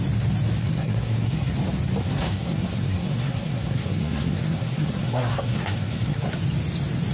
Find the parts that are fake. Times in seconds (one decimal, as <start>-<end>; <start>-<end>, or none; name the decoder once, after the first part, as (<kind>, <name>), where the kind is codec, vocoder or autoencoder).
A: 0.6-1.5 (codec, SNAC); 2.0-6.3